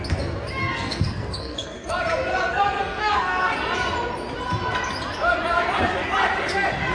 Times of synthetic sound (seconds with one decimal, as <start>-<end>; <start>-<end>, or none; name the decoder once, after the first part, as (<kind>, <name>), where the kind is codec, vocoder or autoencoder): 0.6-1.9 (codec, SNAC); 2.3-3.5